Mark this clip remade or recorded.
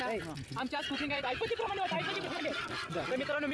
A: recorded